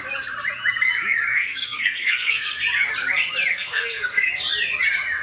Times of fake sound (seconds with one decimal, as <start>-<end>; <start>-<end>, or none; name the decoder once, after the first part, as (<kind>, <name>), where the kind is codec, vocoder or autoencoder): 1.3-2.6 (codec, SNAC); 3.5-4.3